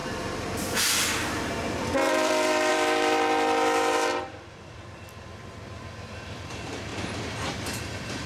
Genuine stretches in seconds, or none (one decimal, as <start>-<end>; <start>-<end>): none